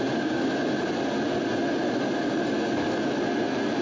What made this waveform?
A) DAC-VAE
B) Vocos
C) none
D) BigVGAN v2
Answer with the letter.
C